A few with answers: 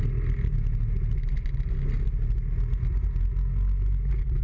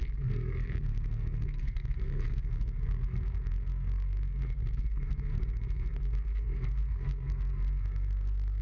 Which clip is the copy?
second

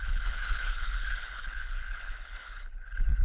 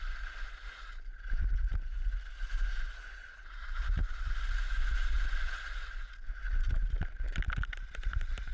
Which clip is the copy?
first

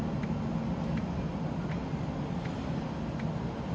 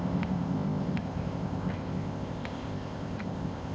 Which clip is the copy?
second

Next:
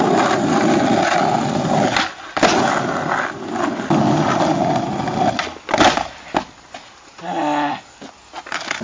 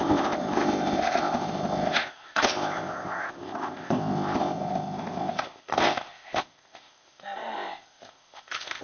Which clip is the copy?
second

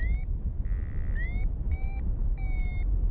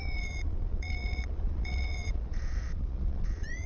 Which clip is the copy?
second